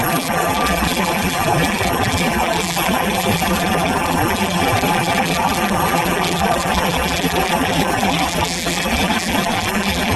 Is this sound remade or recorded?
remade